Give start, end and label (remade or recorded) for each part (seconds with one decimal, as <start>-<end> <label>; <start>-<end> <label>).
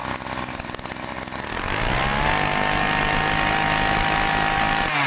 0.0-5.1 recorded